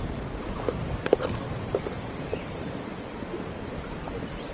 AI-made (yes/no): no